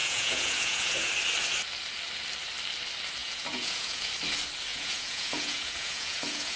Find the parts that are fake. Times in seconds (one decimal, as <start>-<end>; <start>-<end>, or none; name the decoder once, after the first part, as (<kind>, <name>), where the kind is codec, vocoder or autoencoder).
0.0-1.1 (vocoder, Vocos); 3.2-4.1; 4.7-6.6